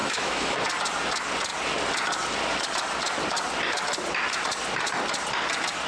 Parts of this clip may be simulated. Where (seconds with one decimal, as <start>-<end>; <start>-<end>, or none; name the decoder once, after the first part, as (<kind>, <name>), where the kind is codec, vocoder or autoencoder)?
0.0-0.6 (autoencoder, DAC-VAE)